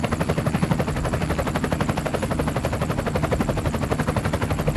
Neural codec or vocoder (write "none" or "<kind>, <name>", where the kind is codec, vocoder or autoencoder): none